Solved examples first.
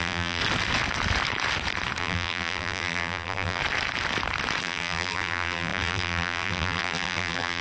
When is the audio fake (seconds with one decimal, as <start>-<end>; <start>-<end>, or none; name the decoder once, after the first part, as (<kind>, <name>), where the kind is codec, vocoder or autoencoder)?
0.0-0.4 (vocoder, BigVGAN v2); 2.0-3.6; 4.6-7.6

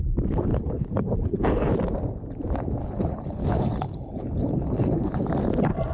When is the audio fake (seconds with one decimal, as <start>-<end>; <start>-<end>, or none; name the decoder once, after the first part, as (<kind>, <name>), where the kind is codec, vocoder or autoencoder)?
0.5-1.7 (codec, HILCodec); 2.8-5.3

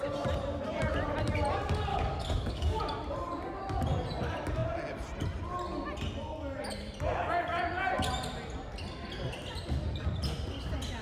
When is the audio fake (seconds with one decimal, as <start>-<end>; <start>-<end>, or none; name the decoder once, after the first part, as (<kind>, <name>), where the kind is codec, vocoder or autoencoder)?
1.9-2.8 (codec, DAC)